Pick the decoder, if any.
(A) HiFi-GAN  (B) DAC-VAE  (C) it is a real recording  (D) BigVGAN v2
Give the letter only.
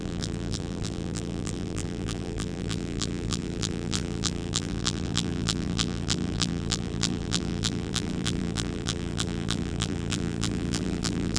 D